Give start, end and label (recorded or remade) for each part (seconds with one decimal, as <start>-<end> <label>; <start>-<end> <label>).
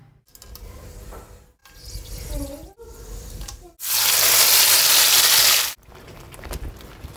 0.0-7.2 recorded